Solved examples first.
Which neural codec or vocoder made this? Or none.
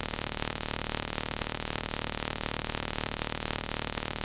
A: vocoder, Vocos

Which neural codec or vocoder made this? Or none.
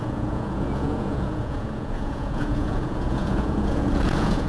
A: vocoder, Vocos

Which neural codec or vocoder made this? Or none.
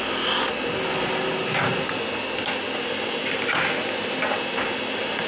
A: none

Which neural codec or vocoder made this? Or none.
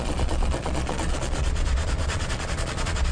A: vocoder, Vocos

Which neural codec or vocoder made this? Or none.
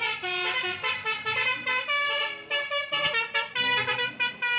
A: none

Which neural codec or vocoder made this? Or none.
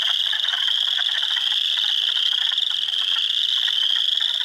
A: none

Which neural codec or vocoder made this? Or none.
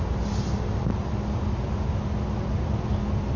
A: none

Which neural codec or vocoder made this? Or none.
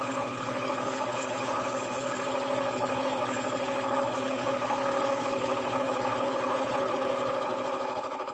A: codec, HILCodec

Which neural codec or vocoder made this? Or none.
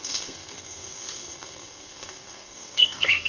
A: codec, SNAC